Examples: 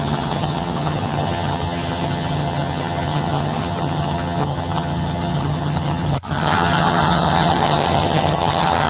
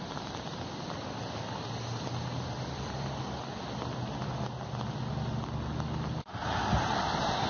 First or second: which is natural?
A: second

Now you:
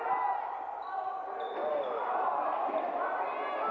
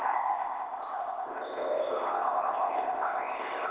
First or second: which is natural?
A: first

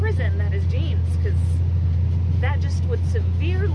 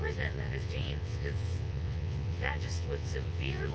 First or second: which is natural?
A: first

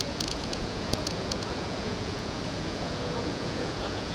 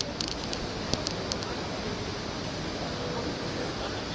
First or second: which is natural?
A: second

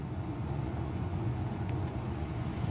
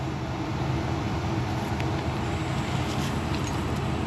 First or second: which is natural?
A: second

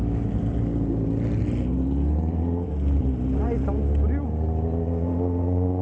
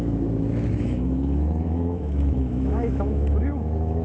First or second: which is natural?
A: first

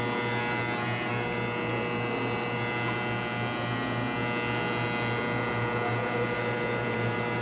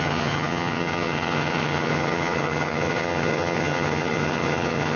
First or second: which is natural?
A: first